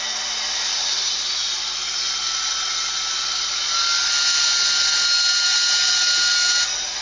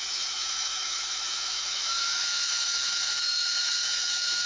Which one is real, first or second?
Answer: first